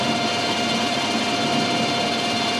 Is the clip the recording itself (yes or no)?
yes